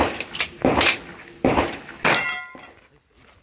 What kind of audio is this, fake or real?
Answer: real